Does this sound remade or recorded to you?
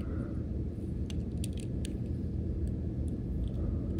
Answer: recorded